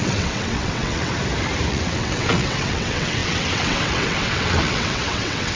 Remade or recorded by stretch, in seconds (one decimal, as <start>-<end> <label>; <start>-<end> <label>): 0.0-1.1 remade; 1.1-1.7 recorded; 1.7-5.6 remade